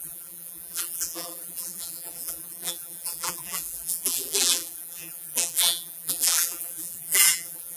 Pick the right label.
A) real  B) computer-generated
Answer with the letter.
B